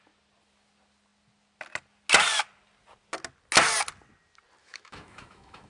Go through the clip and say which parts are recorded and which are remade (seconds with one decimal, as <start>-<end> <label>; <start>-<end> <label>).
0.0-4.6 recorded; 4.6-5.7 remade